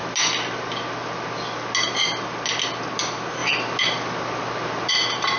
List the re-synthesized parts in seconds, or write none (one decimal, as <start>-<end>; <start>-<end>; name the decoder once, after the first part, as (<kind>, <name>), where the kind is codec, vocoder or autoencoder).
none